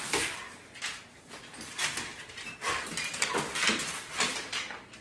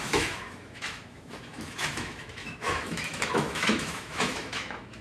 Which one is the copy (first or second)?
second